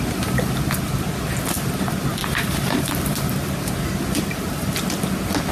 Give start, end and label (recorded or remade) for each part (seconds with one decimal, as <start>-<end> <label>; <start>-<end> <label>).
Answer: 0.0-2.2 recorded; 2.2-4.6 remade; 4.6-5.5 recorded